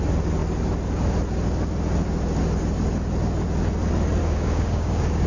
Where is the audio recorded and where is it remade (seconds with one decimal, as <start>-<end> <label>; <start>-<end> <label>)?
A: 0.0-4.2 recorded; 4.2-5.3 remade